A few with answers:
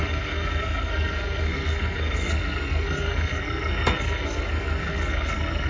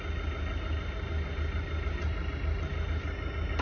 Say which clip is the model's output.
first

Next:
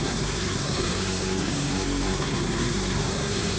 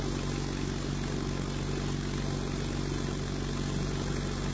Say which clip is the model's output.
first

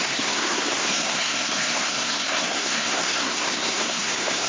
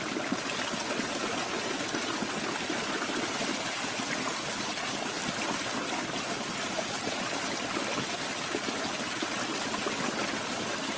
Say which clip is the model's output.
first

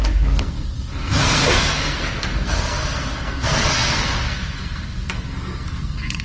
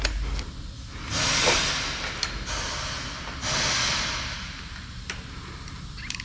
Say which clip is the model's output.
first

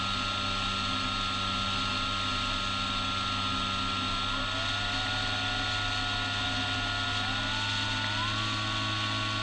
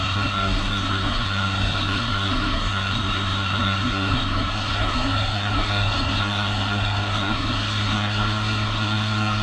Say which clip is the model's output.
second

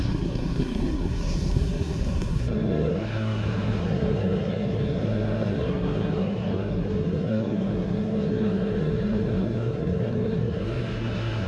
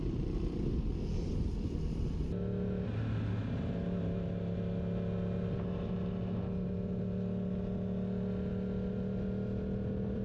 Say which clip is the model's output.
first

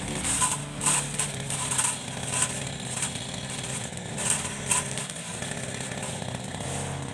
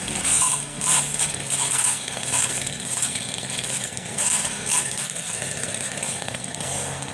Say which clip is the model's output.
second